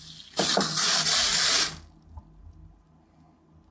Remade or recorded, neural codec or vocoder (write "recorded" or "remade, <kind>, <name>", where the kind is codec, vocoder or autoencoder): recorded